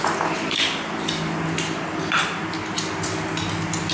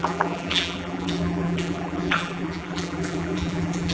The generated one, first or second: second